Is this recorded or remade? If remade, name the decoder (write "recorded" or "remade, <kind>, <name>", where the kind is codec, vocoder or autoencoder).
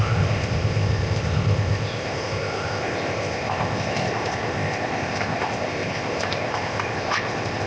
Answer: remade, codec, ZipCodec